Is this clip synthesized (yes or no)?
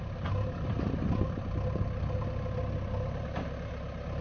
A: no